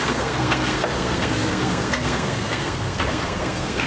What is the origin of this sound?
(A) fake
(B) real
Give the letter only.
A